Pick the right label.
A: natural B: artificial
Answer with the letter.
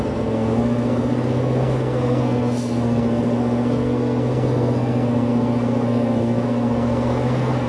B